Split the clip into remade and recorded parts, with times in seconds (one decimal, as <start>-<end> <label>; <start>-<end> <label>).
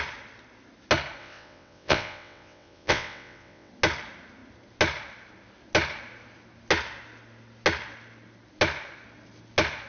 0.0-1.2 recorded; 1.2-3.7 remade; 3.7-9.9 recorded